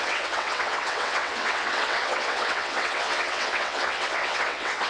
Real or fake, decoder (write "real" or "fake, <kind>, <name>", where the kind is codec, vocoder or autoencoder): fake, vocoder, WaveNeXt